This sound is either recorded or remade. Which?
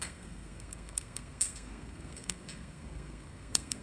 remade